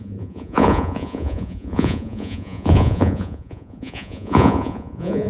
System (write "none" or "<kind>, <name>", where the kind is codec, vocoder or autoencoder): vocoder, Vocos